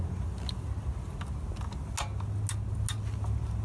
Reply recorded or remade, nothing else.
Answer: recorded